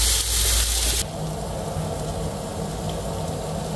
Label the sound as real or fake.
real